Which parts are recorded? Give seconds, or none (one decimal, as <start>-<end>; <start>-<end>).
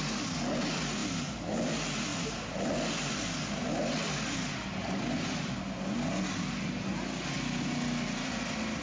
0.0-8.8